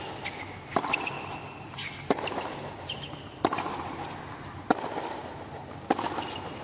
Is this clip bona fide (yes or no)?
yes